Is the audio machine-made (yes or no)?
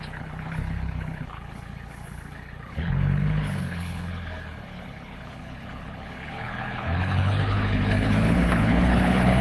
yes